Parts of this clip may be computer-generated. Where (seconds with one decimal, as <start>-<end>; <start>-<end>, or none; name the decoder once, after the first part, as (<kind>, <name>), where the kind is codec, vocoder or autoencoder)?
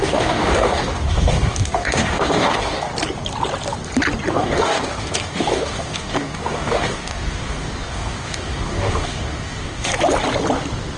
0.0-2.9 (codec, DAC); 4.3-9.9